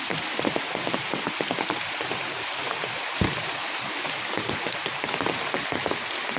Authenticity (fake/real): real